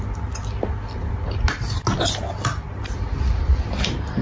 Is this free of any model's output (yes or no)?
yes